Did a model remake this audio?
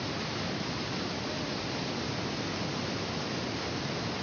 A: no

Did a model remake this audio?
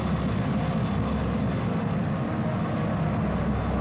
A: no